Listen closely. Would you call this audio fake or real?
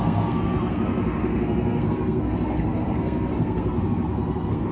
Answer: fake